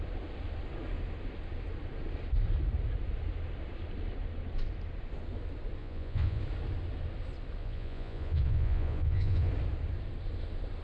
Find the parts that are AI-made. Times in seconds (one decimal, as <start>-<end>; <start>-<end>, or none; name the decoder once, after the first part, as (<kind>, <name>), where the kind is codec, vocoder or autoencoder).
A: 5.8-6.4 (vocoder, Vocos); 7.6-9.5